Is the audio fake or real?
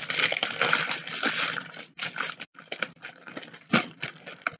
real